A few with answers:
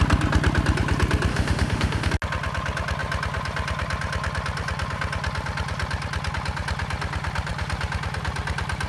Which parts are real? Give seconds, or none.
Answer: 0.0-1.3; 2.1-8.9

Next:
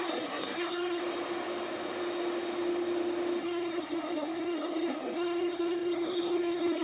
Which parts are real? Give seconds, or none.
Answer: 1.0-3.4

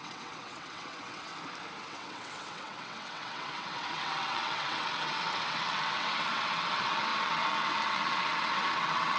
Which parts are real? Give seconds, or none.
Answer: 1.3-1.8

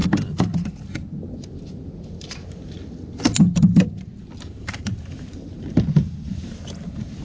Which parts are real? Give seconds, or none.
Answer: 0.8-4.5

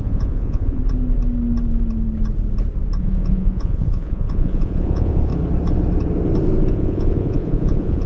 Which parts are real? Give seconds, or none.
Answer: 0.8-3.0; 5.3-6.7

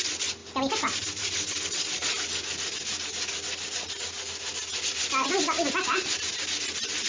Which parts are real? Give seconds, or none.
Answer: 0.0-7.1

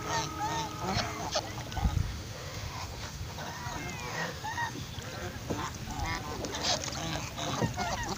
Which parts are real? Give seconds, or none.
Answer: 0.0-2.0; 3.6-4.1; 4.9-8.2